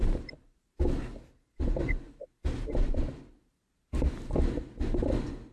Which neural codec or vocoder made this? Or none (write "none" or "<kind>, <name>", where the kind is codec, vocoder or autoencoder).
none